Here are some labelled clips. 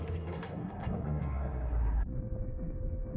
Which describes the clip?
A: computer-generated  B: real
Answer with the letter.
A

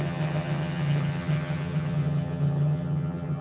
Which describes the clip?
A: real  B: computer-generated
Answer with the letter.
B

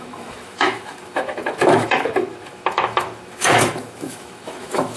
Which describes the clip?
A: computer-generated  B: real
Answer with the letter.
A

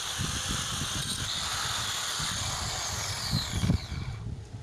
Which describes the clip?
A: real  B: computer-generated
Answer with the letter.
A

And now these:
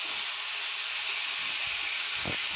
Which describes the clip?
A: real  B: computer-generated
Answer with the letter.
A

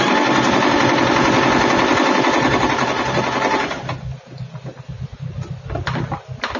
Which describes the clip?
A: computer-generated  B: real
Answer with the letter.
B